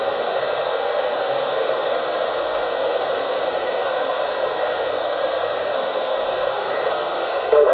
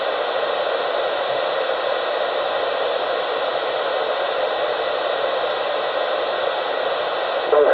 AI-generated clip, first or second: first